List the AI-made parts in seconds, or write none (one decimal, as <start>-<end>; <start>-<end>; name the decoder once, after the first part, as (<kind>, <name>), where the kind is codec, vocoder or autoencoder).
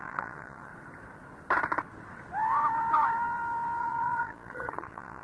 0.0-0.7 (vocoder, Vocos); 3.8-5.2